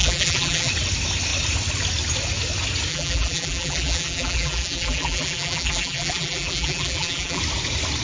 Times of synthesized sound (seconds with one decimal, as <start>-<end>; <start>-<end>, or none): 0.0-0.7; 2.9-7.4